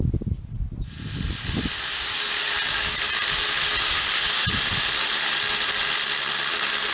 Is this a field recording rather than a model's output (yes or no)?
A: yes